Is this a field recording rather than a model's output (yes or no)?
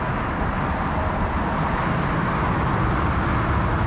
yes